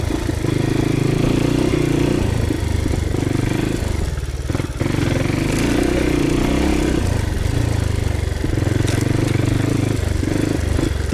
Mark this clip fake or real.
real